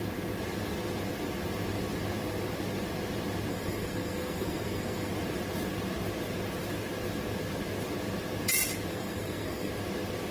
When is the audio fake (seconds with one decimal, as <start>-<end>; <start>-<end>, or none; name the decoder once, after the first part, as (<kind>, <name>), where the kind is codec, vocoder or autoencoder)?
3.5-5.1 (codec, SNAC); 8.9-9.7